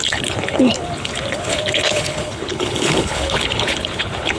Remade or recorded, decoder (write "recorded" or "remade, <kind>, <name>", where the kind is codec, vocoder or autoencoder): remade, codec, HILCodec